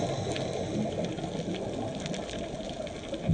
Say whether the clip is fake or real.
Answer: real